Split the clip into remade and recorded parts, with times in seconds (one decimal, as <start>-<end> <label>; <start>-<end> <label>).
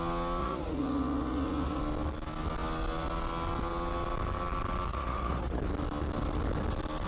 0.0-0.4 recorded; 0.4-1.8 remade; 1.8-4.9 recorded; 4.9-5.6 remade; 5.6-7.1 recorded